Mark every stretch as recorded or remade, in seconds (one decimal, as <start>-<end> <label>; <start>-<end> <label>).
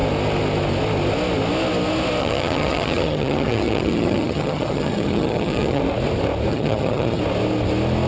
0.0-2.2 recorded; 2.2-5.8 remade; 5.8-6.5 recorded; 6.5-7.2 remade; 7.2-8.1 recorded